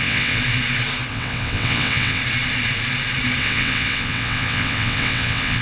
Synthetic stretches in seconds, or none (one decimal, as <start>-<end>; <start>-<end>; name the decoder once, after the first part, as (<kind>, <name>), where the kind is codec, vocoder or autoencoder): 0.0-0.4 (vocoder, WaveNeXt); 1.1-2.2; 3.4-5.6